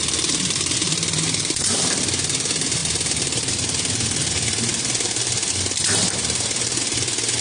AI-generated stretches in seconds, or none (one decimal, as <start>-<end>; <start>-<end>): none